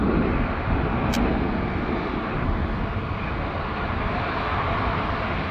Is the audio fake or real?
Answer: real